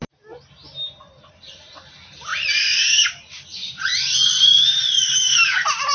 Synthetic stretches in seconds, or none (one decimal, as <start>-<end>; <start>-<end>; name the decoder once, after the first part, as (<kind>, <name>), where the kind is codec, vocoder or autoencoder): 3.5-4.3 (vocoder, BigVGAN v2)